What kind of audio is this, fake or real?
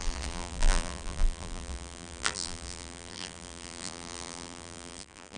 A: fake